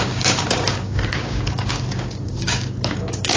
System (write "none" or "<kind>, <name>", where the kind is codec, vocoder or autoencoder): codec, DAC